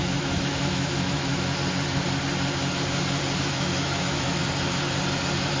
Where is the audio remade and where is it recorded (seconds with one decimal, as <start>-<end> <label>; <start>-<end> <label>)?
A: 0.0-1.3 remade; 1.3-3.4 recorded; 3.4-4.4 remade; 4.4-5.6 recorded